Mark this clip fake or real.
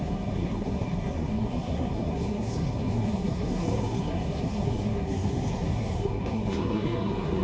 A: fake